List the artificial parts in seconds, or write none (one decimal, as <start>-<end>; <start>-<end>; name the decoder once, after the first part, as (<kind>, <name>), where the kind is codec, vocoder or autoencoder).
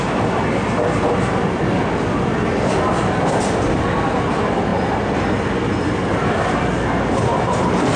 none